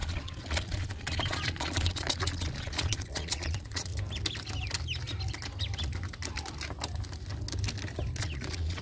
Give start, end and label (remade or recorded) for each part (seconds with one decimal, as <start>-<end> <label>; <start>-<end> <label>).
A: 0.0-3.9 remade; 3.9-8.2 recorded; 8.2-8.8 remade

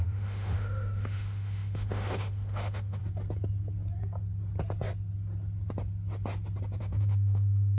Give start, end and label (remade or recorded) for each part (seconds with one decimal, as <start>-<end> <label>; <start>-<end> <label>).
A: 0.0-3.0 remade; 3.0-6.8 recorded; 6.8-7.8 remade

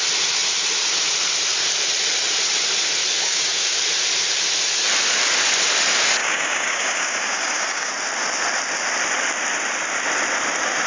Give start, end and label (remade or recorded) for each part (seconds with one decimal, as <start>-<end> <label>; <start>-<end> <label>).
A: 0.0-3.2 recorded; 3.2-3.8 remade; 3.8-6.2 recorded; 6.2-7.9 remade; 7.9-10.9 recorded